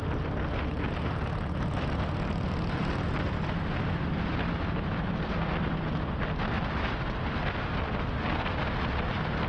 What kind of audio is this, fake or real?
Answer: real